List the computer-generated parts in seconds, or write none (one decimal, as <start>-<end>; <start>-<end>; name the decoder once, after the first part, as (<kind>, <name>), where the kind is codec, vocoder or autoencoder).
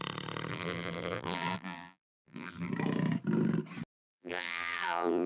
0.5-2.7 (vocoder, BigVGAN v2); 4.0-5.3